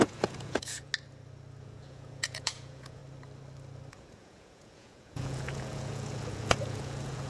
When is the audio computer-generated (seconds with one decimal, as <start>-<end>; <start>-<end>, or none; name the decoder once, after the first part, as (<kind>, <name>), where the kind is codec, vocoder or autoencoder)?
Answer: 0.0-0.9 (vocoder, Vocos); 1.6-3.0; 3.9-7.3